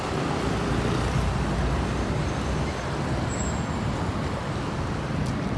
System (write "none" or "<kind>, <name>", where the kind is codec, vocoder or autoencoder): none